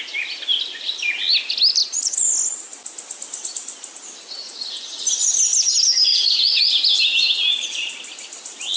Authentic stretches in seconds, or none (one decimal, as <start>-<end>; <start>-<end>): 0.0-1.8; 2.3-4.4; 5.0-6.1; 6.7-8.8